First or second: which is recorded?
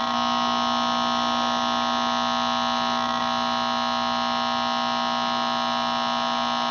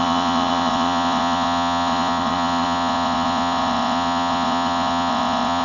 first